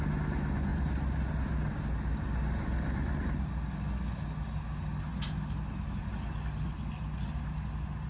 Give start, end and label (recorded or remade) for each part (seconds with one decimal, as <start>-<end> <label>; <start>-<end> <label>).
0.0-8.1 recorded

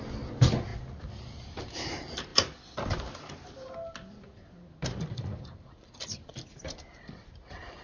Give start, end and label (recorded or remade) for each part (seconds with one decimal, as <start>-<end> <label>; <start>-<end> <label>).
0.0-2.3 recorded; 2.3-3.1 remade; 3.1-4.8 recorded; 4.8-6.0 remade; 6.0-6.6 recorded; 6.6-7.8 remade

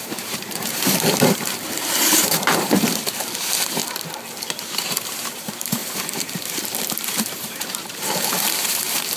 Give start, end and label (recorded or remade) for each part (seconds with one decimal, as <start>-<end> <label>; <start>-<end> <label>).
0.0-3.8 remade; 3.8-4.3 recorded; 4.3-9.2 remade

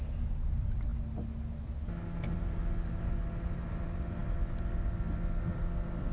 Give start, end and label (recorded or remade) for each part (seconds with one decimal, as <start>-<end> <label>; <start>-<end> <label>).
0.0-6.1 recorded

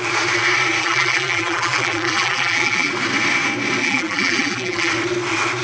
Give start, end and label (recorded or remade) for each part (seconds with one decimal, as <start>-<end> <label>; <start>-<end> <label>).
0.0-0.8 recorded; 0.8-2.9 remade; 2.9-3.8 recorded; 3.8-4.9 remade; 4.9-5.6 recorded